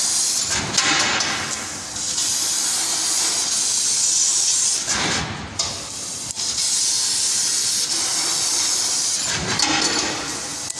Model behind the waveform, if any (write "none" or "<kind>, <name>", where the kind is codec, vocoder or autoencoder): none